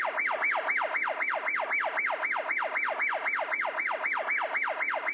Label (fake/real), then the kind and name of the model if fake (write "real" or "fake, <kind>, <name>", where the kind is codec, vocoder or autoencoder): real